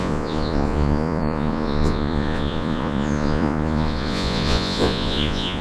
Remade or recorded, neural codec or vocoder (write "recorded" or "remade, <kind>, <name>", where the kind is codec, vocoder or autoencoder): remade, vocoder, Vocos